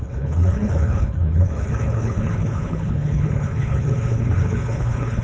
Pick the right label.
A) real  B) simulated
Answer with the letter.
B